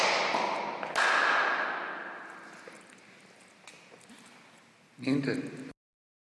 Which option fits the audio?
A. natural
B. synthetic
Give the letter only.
A